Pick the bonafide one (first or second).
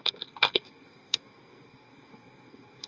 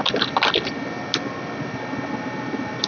second